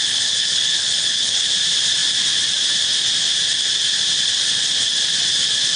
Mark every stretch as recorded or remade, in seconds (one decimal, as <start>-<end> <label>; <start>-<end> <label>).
0.0-1.4 remade; 1.4-5.8 recorded